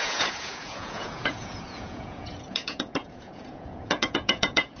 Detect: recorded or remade remade